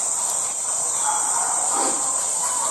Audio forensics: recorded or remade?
recorded